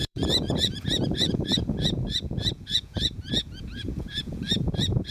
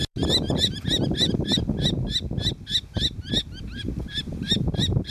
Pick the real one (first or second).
second